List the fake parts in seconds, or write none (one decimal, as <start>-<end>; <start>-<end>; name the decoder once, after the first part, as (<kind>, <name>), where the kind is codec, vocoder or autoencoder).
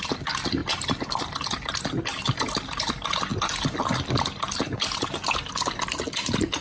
none